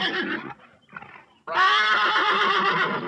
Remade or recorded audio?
recorded